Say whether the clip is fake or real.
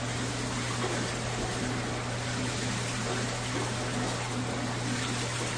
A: real